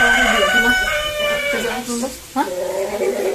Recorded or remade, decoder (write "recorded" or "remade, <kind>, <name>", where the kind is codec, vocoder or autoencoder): recorded